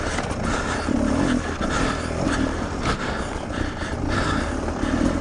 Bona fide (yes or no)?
yes